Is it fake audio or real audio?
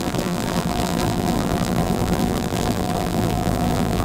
fake